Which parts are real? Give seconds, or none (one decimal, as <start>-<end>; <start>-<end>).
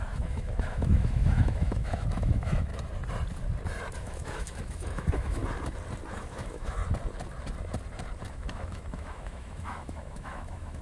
2.7-4.0; 5.4-6.1; 6.8-8.3